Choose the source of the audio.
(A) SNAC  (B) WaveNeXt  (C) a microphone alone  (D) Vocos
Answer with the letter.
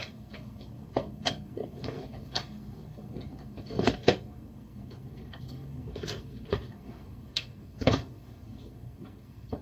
A